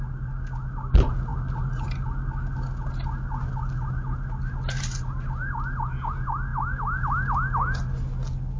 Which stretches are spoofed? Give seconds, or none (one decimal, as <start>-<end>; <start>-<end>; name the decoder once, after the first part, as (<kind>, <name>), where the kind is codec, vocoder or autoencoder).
none